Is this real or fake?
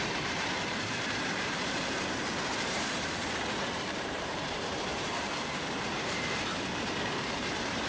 fake